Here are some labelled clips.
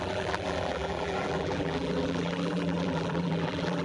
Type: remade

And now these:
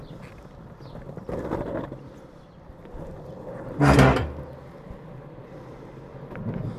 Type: recorded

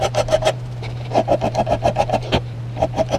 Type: remade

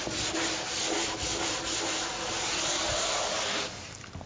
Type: recorded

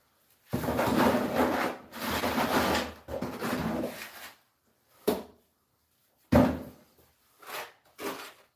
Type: recorded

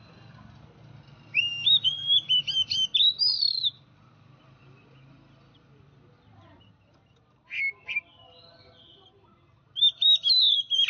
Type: recorded